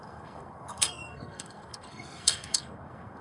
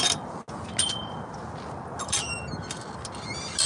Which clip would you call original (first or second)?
second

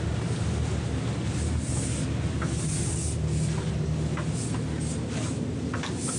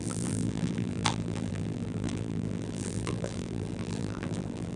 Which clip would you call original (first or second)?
first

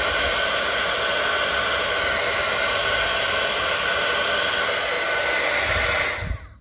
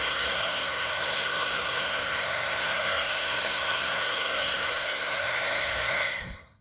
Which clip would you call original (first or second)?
first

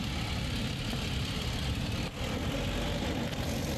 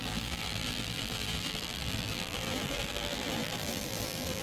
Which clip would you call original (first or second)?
first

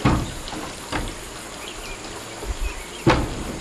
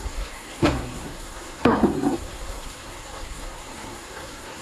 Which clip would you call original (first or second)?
first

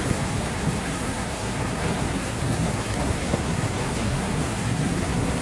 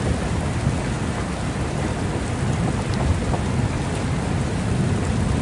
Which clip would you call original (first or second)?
second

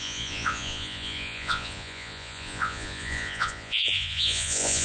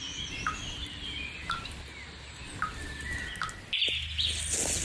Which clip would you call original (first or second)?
second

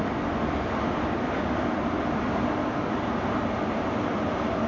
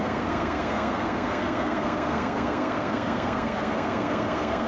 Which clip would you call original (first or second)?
first